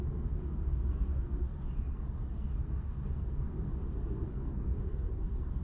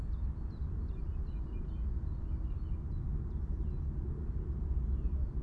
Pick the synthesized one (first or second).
first